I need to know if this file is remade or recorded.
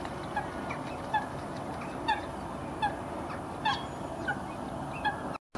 recorded